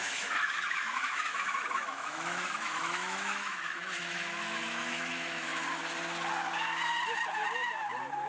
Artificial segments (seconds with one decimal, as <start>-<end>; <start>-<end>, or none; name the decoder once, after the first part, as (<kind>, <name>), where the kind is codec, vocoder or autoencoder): 0.0-5.5 (autoencoder, DAC-VAE)